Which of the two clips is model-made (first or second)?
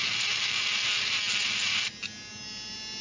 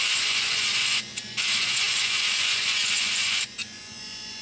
second